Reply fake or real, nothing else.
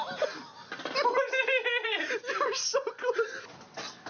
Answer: real